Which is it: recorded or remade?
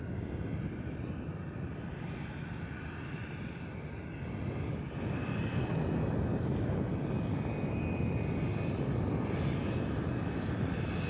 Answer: recorded